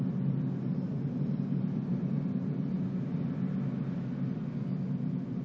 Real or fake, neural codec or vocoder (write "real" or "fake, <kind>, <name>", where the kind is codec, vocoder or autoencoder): real